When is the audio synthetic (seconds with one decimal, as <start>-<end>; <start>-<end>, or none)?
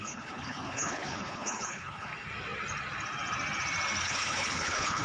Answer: 0.0-2.1; 4.0-5.0